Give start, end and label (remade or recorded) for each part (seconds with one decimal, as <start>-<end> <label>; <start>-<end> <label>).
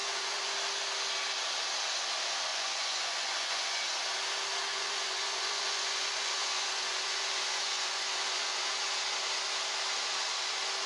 0.0-0.5 remade; 0.5-2.5 recorded; 2.5-3.8 remade; 3.8-4.7 recorded; 4.7-8.7 remade; 8.7-10.9 recorded